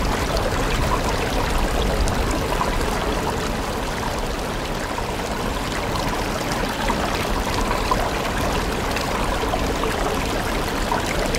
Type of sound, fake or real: real